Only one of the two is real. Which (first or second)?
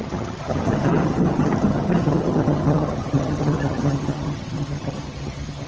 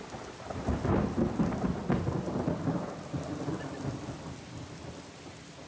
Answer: second